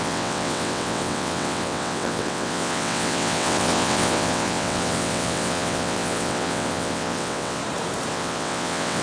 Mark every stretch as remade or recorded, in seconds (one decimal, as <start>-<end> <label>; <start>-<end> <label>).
0.0-7.6 remade; 7.6-8.1 recorded; 8.1-9.0 remade